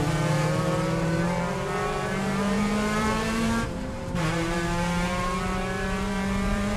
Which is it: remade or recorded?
remade